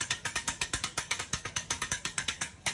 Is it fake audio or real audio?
fake